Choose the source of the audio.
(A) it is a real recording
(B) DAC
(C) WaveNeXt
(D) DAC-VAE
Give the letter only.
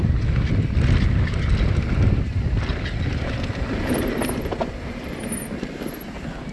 A